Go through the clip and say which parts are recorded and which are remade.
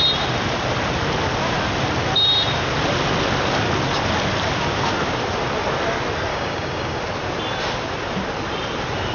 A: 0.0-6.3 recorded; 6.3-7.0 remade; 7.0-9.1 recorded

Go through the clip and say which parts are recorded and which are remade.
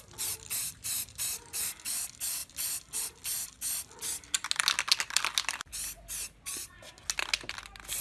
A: 0.0-0.6 recorded; 0.6-1.6 remade; 1.6-8.0 recorded